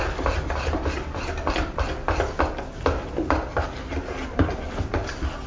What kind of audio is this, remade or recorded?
recorded